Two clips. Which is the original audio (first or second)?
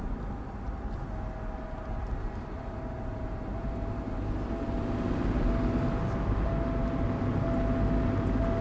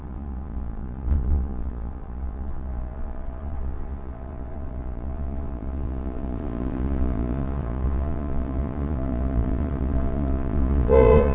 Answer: first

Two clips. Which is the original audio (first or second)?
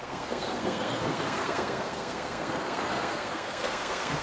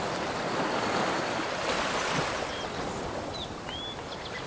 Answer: second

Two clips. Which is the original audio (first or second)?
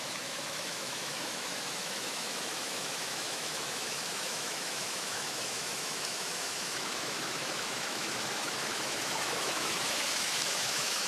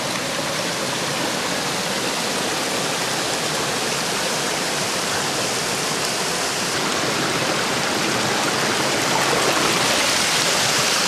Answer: second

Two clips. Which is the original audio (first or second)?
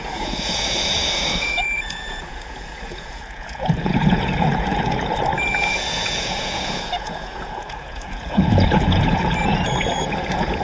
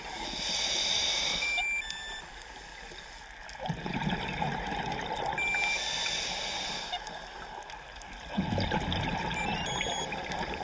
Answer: second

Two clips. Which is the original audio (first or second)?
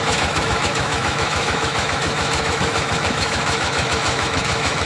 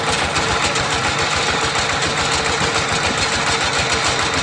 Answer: second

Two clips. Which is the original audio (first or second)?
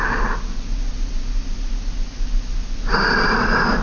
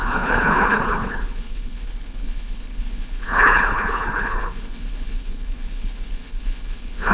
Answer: first